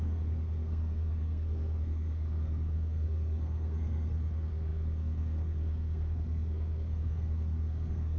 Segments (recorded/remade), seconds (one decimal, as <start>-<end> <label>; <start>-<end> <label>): 0.0-8.2 remade